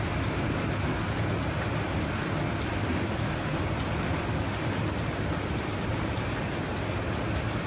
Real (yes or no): yes